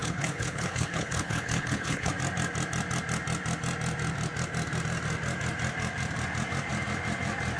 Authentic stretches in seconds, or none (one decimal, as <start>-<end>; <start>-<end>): 2.1-7.6